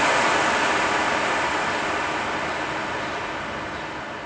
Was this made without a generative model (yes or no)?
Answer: yes